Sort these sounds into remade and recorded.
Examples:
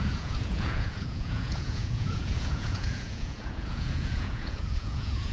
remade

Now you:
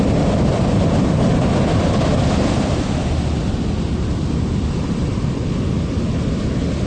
recorded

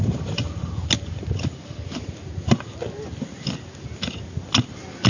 recorded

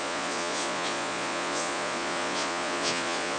remade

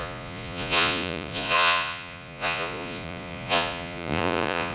remade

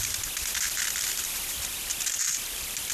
recorded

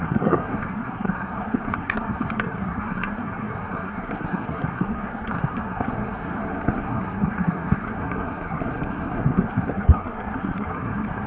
remade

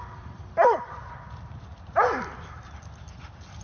recorded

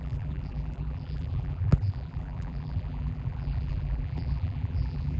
remade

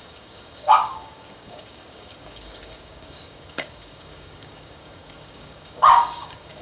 remade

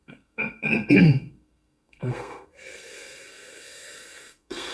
remade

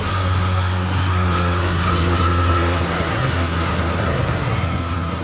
remade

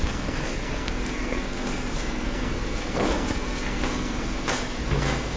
remade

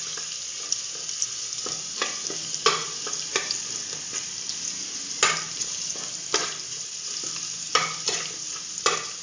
recorded